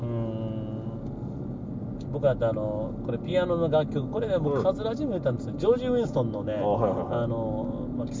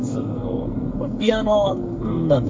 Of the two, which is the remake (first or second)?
second